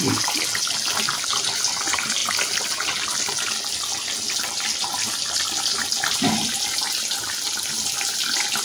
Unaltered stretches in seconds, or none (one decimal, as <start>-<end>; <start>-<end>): 0.0-8.6